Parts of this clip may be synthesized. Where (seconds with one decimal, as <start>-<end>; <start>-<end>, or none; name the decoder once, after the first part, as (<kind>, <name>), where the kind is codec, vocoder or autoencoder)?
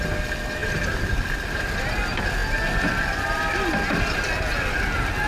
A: none